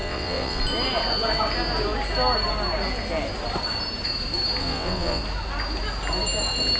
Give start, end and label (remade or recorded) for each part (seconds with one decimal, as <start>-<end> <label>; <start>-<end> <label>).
0.0-0.6 remade; 0.6-4.6 recorded; 4.6-5.2 remade; 5.2-6.8 recorded